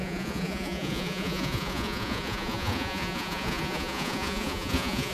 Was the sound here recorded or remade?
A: remade